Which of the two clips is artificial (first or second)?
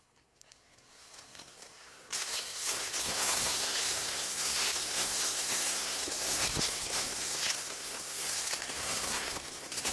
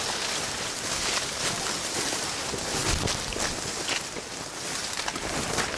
first